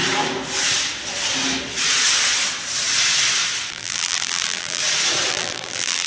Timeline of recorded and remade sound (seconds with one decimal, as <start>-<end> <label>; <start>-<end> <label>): 0.0-3.7 recorded; 3.7-4.8 remade; 4.8-5.3 recorded; 5.3-6.1 remade